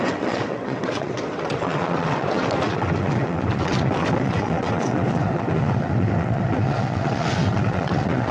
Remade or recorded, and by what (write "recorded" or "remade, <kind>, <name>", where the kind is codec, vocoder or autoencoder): remade, vocoder, WaveNeXt